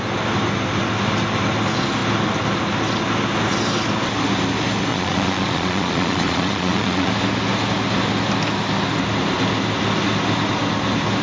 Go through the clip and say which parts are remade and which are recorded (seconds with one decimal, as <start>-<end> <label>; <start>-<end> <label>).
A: 0.0-4.9 recorded; 4.9-7.1 remade; 7.1-11.2 recorded